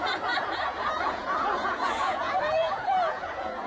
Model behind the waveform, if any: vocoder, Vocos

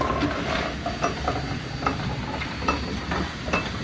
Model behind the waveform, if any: none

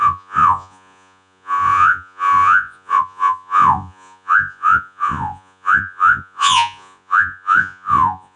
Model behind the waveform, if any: vocoder, Vocos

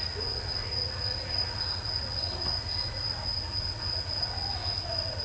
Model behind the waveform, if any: vocoder, Vocos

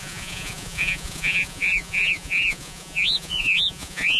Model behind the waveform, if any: vocoder, Vocos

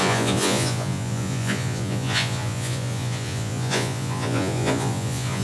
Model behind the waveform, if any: vocoder, Vocos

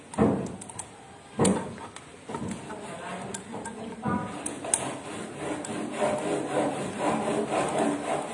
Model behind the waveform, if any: none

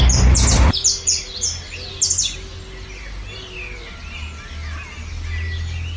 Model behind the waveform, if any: none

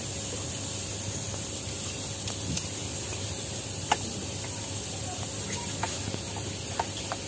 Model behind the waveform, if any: none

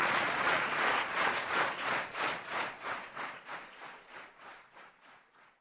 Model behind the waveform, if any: vocoder, Vocos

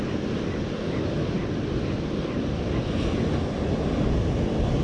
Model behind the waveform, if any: none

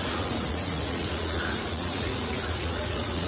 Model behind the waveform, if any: vocoder, Vocos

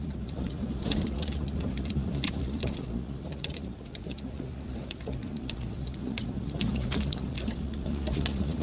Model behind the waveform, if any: vocoder, Vocos